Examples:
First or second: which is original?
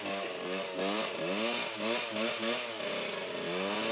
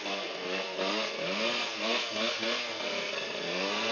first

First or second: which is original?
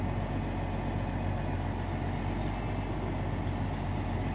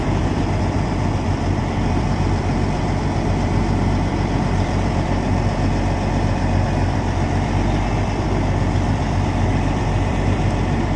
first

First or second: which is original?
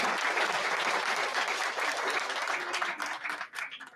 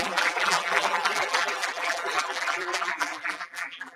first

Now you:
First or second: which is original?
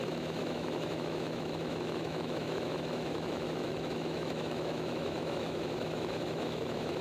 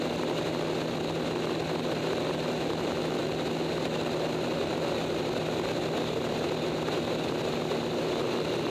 second